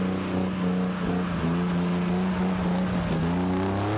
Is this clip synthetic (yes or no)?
no